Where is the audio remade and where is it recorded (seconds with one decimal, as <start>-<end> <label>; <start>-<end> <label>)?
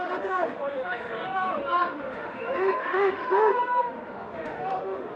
0.0-5.2 remade